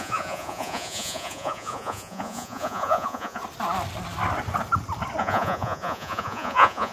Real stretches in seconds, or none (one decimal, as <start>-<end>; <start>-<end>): 3.4-5.2